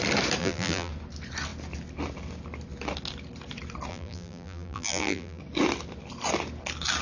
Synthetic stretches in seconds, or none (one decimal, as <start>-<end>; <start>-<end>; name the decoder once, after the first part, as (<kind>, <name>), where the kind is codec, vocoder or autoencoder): 0.4-0.9 (vocoder, BigVGAN v2); 3.9-5.4